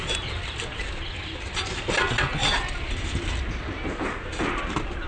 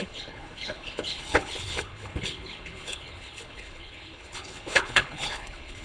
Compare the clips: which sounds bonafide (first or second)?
first